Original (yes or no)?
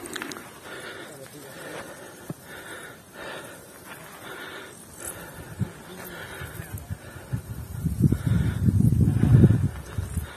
yes